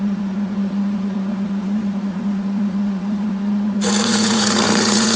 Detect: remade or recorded remade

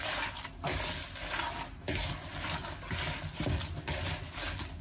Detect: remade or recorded recorded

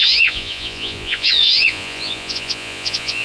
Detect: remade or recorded remade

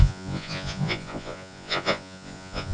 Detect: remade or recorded remade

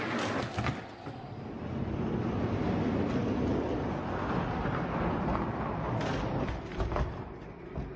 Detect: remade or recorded recorded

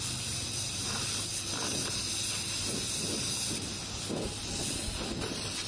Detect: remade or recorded recorded